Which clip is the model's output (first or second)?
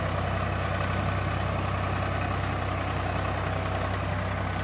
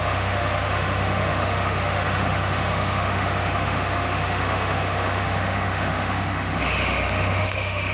second